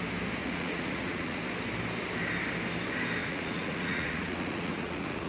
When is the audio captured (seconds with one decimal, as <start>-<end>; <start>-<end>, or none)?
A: 0.0-0.4; 1.4-3.2